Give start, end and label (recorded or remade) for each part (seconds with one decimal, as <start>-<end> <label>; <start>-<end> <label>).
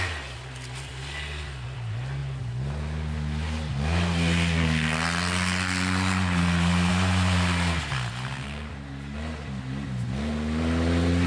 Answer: 0.0-11.3 recorded